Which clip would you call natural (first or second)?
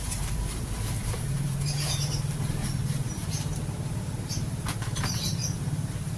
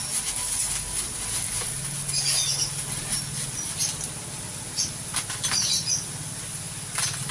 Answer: second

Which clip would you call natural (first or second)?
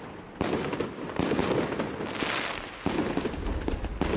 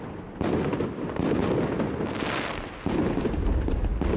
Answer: second